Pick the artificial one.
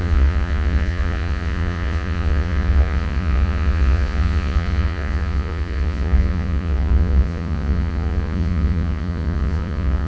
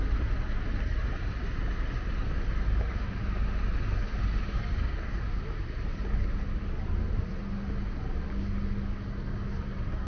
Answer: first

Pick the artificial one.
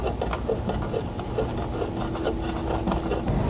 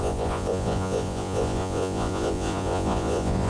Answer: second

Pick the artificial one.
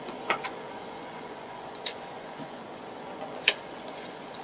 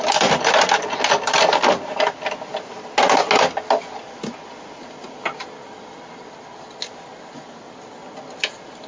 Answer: first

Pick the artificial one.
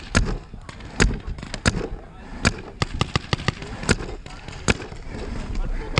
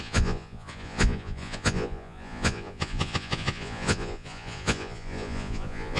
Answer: second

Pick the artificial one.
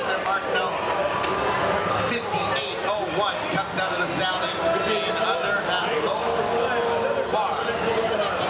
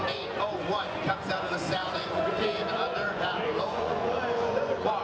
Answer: second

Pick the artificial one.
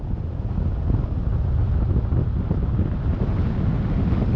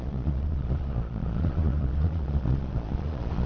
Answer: second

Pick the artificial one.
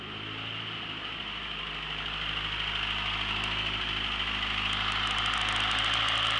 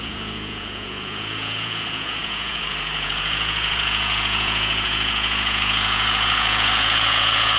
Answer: second